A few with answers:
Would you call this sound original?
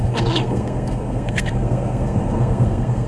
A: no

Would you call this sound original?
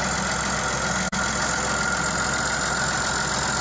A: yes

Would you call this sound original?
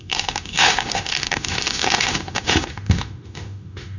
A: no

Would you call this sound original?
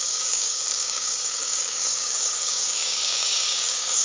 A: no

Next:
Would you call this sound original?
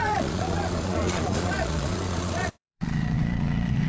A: no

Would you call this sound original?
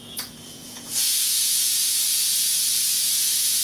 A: no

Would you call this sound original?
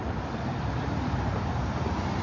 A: yes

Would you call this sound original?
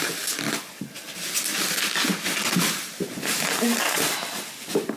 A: yes